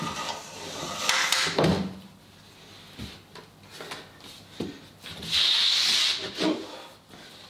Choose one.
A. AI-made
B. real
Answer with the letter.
B